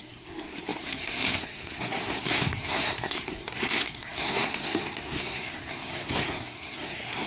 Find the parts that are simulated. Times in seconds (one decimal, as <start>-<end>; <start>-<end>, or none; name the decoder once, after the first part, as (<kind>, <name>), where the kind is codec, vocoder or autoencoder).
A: 0.0-7.3 (codec, SNAC)